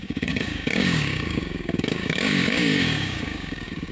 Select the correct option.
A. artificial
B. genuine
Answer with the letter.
A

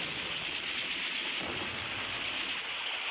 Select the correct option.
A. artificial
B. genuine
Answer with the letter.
B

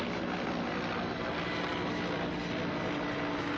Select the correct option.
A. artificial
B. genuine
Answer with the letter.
B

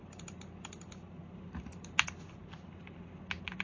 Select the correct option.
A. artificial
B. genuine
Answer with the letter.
B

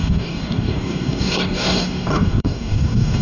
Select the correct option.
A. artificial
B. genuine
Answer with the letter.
A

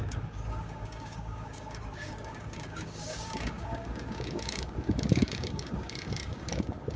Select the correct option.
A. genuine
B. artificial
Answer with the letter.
B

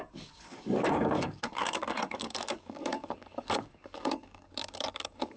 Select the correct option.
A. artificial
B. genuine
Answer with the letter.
A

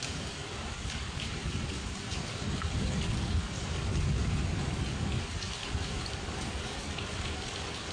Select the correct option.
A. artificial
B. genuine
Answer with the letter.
A